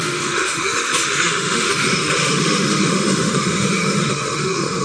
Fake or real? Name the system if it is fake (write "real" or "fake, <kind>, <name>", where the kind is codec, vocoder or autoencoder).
fake, autoencoder, DAC-VAE